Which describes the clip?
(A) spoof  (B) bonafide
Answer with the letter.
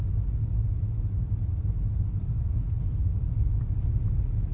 B